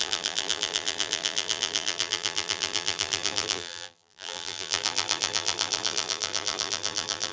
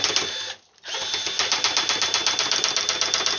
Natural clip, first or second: second